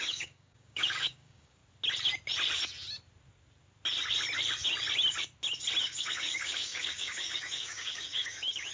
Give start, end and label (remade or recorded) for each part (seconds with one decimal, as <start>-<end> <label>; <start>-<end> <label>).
0.0-1.6 remade; 1.6-5.8 recorded; 5.8-8.7 remade